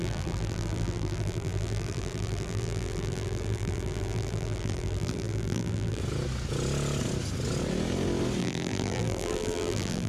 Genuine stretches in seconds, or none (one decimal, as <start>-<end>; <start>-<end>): 6.0-8.4